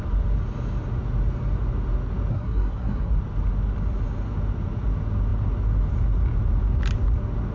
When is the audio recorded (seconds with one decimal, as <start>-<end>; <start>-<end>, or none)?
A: 0.0-2.3; 3.1-7.5